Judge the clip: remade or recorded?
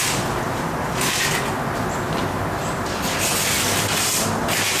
recorded